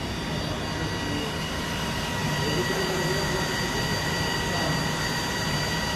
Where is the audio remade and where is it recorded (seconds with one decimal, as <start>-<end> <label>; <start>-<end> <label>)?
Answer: 0.0-6.0 recorded